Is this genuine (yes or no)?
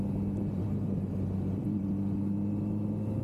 yes